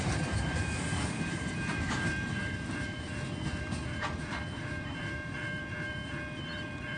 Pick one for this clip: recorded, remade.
remade